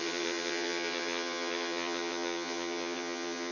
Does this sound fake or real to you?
fake